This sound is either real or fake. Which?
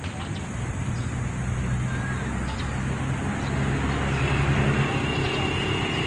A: real